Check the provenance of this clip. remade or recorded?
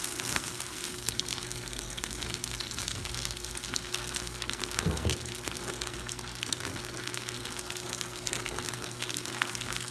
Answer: remade